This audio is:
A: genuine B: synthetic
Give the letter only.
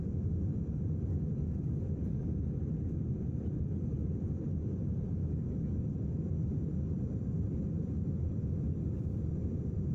A